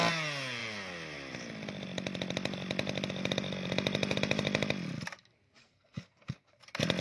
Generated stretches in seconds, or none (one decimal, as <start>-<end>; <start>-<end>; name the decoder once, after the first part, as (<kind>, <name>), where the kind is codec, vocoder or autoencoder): 5.6-6.6 (codec, SNAC)